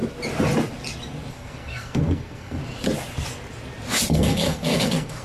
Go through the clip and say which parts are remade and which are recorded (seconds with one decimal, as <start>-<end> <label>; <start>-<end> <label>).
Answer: 0.0-1.3 recorded; 1.3-2.6 remade; 2.6-4.1 recorded; 4.1-5.2 remade